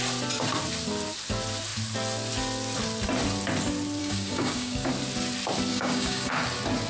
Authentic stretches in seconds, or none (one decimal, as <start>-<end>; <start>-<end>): 0.0-4.0; 4.9-5.7; 6.3-6.9